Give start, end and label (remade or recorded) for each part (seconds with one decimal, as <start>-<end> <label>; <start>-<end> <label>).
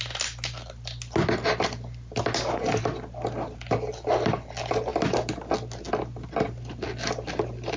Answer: 0.0-7.8 recorded